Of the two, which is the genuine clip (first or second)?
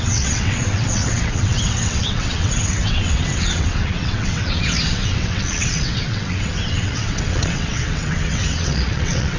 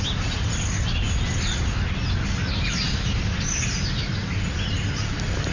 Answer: second